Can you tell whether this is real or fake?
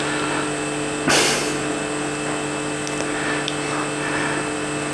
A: real